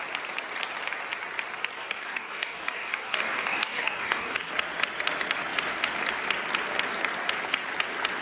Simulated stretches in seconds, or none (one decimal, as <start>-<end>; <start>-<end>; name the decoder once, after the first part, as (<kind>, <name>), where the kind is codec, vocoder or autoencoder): 1.8-4.5 (codec, DAC)